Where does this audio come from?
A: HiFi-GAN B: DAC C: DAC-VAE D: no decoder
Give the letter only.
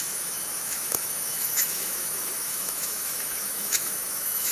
C